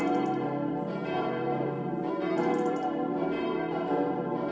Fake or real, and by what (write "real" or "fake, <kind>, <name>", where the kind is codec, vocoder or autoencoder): fake, vocoder, BigVGAN v2